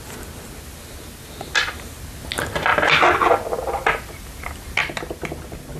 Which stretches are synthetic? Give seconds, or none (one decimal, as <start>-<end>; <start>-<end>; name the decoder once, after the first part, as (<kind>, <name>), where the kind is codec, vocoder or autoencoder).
none